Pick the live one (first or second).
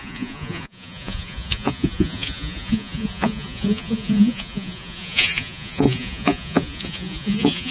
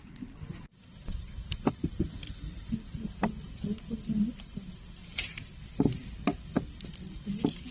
second